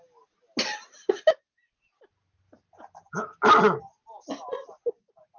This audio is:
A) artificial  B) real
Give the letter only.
B